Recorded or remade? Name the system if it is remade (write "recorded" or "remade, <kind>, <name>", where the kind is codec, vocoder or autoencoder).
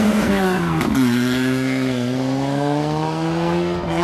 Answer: remade, codec, SNAC